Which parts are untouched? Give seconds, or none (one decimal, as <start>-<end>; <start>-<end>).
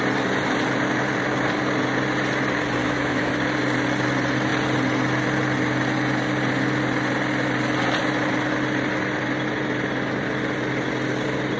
0.0-2.8; 3.3-11.6